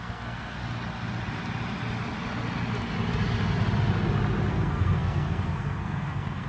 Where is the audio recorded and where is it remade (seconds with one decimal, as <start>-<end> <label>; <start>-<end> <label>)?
0.0-0.6 remade; 0.6-4.5 recorded; 4.5-6.5 remade